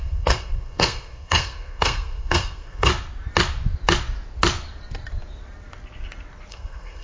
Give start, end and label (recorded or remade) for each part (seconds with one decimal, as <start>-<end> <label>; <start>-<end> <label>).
0.0-2.9 remade; 2.9-6.5 recorded; 6.5-7.0 remade